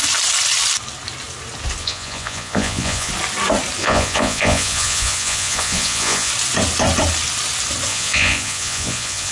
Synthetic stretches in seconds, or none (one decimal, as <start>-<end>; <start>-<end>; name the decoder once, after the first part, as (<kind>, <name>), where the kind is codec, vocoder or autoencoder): 1.8-3.1 (vocoder, Vocos); 3.8-6.3; 7.9-9.3